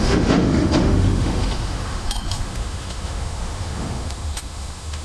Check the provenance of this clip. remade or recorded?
remade